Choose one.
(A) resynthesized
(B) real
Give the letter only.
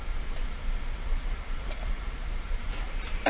A